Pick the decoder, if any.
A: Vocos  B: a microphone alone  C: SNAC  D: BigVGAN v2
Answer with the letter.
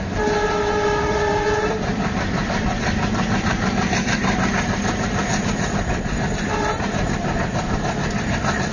D